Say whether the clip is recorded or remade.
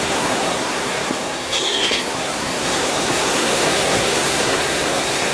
remade